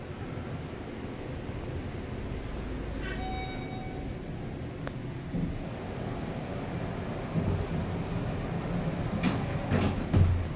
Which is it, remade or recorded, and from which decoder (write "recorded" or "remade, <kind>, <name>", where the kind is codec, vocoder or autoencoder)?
recorded